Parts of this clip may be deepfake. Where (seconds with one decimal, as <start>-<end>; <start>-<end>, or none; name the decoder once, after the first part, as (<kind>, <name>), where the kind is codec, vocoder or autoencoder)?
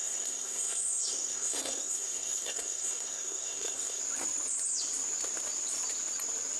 0.0-4.0 (codec, SNAC)